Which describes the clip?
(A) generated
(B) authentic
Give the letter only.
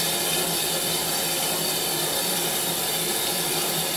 A